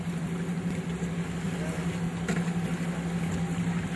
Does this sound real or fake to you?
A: real